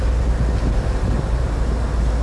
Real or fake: real